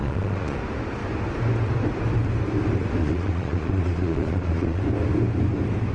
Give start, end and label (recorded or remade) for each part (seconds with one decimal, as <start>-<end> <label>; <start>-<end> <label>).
0.0-0.6 remade; 0.6-3.0 recorded; 3.0-4.8 remade; 4.8-5.9 recorded